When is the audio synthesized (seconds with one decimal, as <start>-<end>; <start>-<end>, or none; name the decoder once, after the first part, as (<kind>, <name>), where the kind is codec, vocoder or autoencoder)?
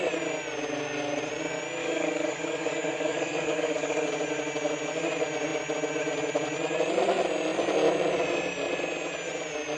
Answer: 1.8-4.1 (codec, DAC)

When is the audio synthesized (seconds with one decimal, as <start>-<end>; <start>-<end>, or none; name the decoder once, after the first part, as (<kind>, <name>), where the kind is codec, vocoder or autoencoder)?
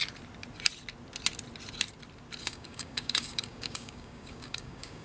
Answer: 2.4-5.0 (codec, DAC)